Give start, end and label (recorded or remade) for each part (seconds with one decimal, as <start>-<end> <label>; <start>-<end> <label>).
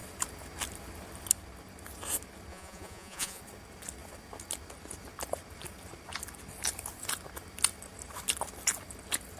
0.0-2.5 recorded; 2.5-3.4 remade; 3.4-9.4 recorded